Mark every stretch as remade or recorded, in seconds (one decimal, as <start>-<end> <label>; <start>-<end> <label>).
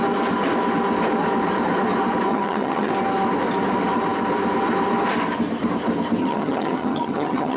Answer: 0.0-2.3 recorded; 2.3-2.9 remade; 2.9-6.2 recorded; 6.2-7.6 remade